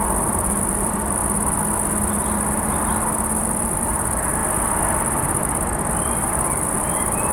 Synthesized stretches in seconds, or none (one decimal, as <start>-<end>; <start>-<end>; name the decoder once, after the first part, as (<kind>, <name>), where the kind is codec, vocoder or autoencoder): 0.0-1.2 (vocoder, BigVGAN v2); 3.4-4.4; 5.4-7.3